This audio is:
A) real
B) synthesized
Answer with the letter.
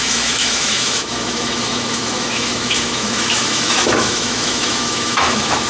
B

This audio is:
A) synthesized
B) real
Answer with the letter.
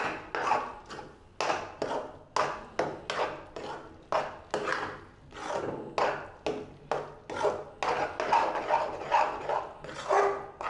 B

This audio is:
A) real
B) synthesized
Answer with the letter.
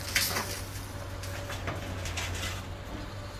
A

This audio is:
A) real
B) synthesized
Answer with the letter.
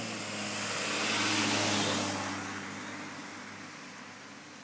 A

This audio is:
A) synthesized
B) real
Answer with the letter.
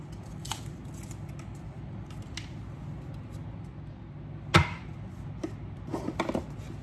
B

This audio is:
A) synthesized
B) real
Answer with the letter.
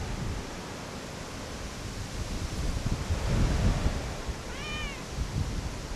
B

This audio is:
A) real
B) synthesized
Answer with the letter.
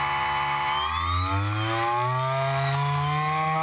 A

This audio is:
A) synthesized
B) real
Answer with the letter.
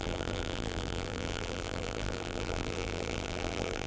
A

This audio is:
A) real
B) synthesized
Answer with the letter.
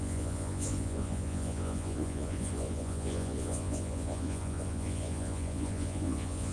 B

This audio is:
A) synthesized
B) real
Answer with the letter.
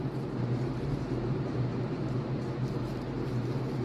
B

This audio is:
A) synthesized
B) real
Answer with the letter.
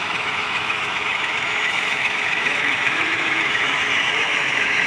A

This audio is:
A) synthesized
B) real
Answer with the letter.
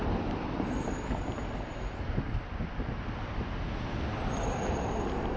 B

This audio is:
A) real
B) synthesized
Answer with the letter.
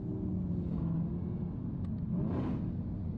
A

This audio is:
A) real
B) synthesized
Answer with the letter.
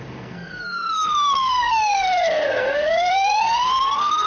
B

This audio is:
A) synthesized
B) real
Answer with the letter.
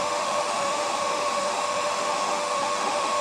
A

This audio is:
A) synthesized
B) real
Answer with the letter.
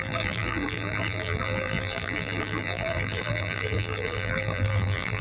A